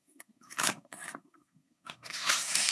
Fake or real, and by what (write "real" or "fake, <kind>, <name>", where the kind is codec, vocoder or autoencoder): fake, codec, SNAC